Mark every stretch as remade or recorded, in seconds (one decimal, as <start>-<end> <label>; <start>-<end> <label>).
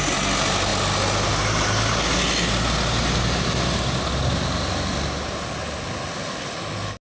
0.0-7.0 recorded